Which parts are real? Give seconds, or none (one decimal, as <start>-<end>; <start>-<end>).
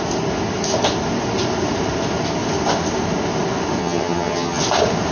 0.0-3.8; 4.6-5.1